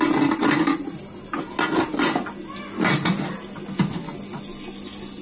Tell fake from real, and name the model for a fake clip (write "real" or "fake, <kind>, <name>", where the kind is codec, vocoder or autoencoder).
real